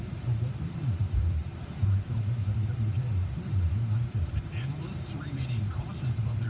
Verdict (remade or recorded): remade